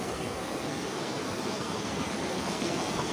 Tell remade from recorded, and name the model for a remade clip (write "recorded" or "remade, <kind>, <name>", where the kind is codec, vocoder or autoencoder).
remade, codec, SNAC